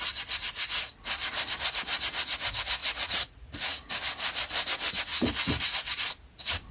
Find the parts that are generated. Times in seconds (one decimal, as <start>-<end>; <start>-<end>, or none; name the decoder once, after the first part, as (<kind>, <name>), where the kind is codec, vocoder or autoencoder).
2.8-3.9 (vocoder, Vocos); 5.1-5.6